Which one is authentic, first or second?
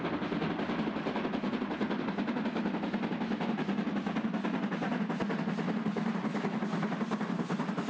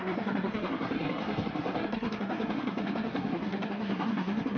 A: first